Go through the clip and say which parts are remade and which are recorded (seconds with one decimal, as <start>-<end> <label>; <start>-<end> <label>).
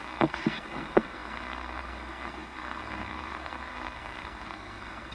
0.0-5.1 remade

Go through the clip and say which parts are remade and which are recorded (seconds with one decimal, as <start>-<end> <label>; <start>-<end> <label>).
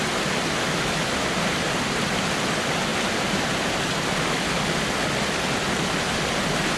0.0-6.8 recorded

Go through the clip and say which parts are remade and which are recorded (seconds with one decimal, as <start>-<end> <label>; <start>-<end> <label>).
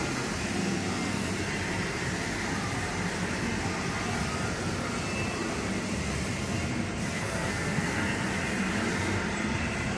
0.0-0.6 recorded; 0.6-1.3 remade; 1.3-7.1 recorded; 7.1-8.0 remade; 8.0-10.0 recorded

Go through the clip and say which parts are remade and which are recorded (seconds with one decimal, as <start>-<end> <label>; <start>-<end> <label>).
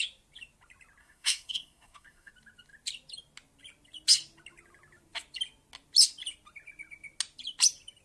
0.0-1.0 recorded; 1.0-2.3 remade; 2.3-8.0 recorded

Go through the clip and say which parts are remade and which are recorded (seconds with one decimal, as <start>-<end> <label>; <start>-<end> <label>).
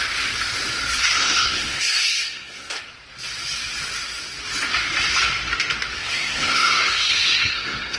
0.0-1.0 recorded; 1.0-2.8 remade; 2.8-6.0 recorded; 6.0-8.0 remade